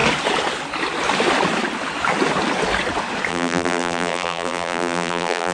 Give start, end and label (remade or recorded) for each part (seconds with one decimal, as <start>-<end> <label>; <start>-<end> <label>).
0.0-3.3 recorded; 3.3-5.5 remade